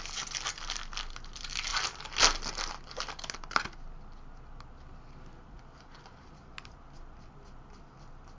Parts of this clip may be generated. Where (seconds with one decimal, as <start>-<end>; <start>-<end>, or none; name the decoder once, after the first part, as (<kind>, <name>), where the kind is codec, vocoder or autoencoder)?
none